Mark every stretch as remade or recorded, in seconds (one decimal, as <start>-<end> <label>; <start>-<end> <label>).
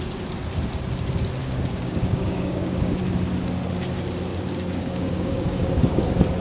0.0-1.4 recorded; 1.4-3.0 remade; 3.0-4.3 recorded; 4.3-5.8 remade; 5.8-6.4 recorded